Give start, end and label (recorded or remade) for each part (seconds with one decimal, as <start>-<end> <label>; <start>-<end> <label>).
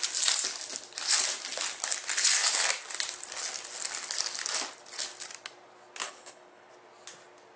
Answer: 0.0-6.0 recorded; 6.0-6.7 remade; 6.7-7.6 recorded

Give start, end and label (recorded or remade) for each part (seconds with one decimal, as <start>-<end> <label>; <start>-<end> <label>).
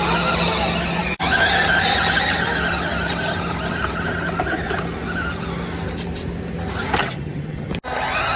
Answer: 0.0-7.0 recorded; 7.0-7.7 remade; 7.7-8.4 recorded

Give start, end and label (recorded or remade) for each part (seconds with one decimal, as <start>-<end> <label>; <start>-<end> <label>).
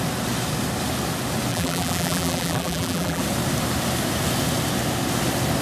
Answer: 0.0-1.5 recorded; 1.5-3.2 remade; 3.2-5.6 recorded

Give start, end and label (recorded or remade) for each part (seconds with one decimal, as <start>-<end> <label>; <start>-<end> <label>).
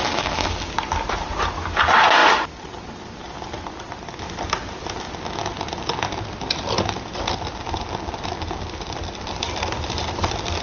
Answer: 0.0-5.4 recorded; 5.4-10.6 remade